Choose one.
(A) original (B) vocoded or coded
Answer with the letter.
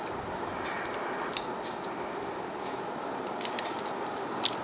A